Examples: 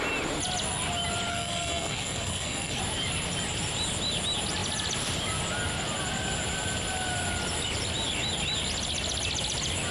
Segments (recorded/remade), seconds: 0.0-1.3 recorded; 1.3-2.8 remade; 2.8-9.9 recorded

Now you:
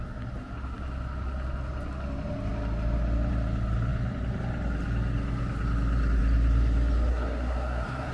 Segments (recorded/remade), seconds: 0.0-7.1 recorded; 7.1-8.1 remade

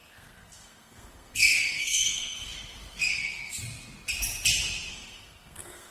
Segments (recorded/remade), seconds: 0.0-2.5 remade; 2.5-3.1 recorded; 3.1-3.6 remade; 3.6-4.9 recorded; 4.9-5.9 remade